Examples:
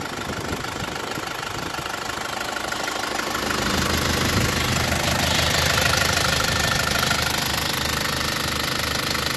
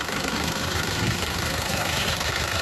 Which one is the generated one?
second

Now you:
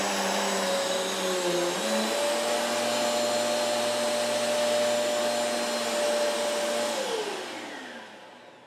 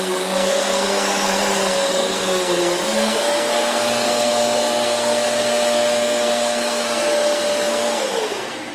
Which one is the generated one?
second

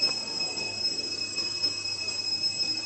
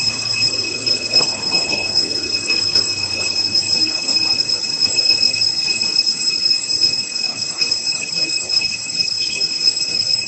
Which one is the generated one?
second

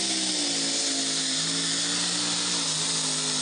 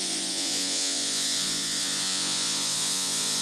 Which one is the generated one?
second